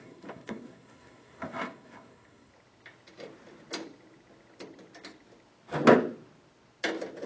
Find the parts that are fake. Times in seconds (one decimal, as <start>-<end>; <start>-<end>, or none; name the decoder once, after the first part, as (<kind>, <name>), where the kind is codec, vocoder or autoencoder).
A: 0.0-2.5 (codec, SNAC)